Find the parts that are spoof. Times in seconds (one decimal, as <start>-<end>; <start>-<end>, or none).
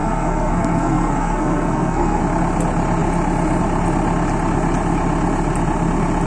0.0-2.2